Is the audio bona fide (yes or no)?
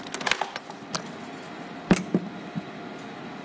yes